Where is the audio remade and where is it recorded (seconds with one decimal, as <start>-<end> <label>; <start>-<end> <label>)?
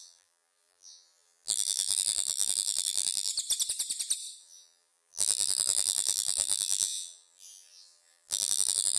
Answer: 0.0-3.3 remade; 3.3-4.4 recorded; 4.4-9.0 remade